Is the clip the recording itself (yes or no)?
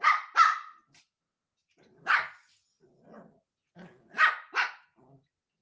yes